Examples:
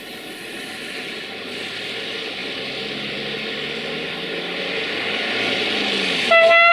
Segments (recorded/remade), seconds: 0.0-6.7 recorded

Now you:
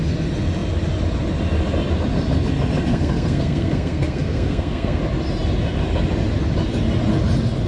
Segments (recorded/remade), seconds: 0.0-2.9 recorded; 2.9-5.0 remade; 5.0-7.7 recorded